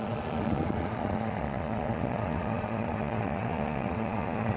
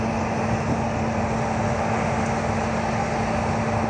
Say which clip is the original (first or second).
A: second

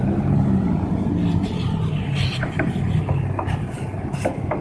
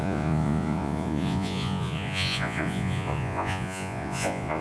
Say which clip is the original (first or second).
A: first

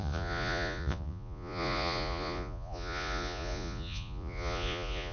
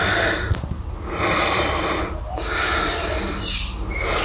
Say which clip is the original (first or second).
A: second